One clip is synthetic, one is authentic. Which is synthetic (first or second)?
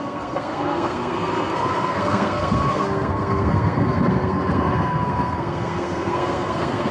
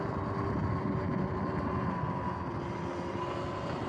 first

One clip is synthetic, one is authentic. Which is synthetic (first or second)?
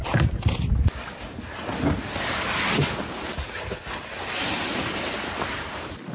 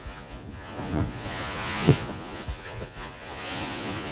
second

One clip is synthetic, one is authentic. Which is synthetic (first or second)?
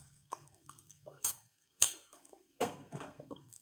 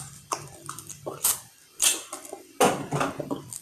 first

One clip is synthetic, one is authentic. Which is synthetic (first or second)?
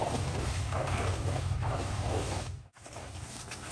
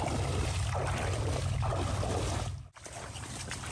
first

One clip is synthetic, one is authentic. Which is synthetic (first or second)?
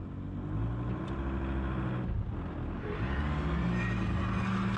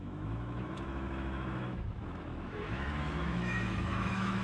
second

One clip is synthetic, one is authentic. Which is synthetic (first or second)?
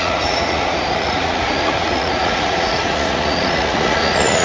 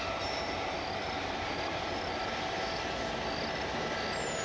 first